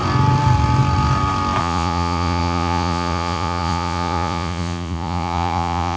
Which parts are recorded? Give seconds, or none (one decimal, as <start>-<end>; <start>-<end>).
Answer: 0.0-1.6